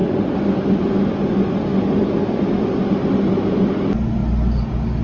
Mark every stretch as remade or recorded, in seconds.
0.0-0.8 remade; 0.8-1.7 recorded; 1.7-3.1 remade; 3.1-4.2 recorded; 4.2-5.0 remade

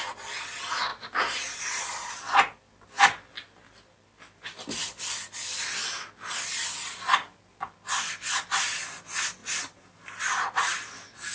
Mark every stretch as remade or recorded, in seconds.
0.0-0.9 recorded; 0.9-2.1 remade; 2.1-9.4 recorded; 9.4-10.2 remade; 10.2-11.3 recorded

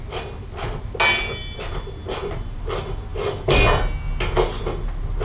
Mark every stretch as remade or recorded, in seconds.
0.0-5.2 recorded

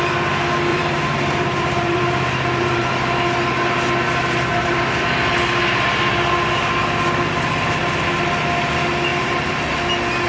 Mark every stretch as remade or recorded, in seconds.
0.0-0.7 recorded; 0.7-2.9 remade; 2.9-4.5 recorded; 4.5-5.3 remade; 5.3-9.1 recorded; 9.1-9.7 remade; 9.7-10.3 recorded